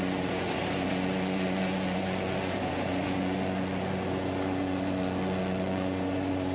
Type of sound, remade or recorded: remade